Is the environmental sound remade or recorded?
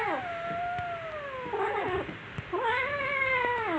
recorded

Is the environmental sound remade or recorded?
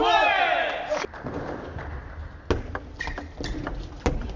recorded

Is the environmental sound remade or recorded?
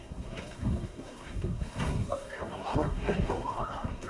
remade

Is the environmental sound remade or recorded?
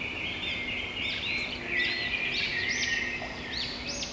recorded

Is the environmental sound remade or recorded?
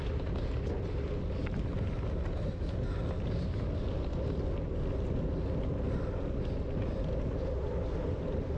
recorded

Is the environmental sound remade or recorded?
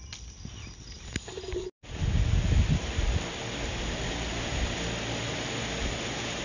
recorded